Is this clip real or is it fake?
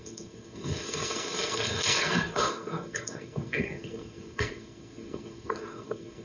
fake